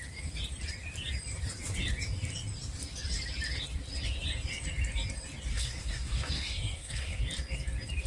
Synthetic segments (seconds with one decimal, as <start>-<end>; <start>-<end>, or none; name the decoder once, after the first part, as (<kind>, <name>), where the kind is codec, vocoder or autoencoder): 5.5-7.2 (codec, SNAC)